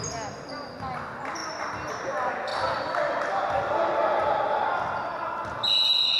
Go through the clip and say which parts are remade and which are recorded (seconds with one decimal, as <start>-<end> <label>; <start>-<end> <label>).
0.0-6.2 recorded